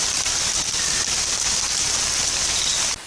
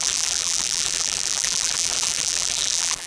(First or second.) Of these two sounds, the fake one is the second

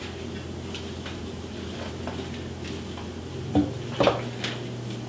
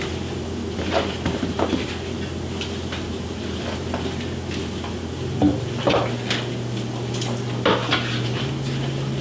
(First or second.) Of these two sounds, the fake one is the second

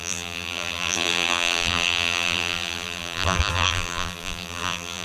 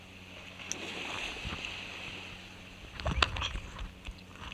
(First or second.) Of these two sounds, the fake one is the first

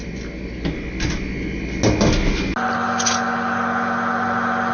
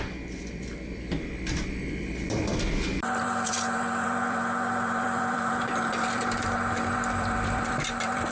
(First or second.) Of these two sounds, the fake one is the second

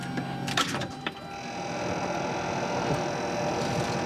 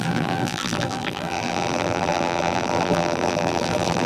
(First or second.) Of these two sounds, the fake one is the second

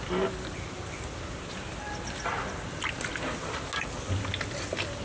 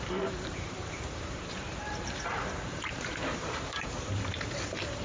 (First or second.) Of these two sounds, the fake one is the second